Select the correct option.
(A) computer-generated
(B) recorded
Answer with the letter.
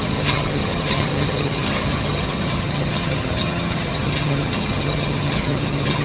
A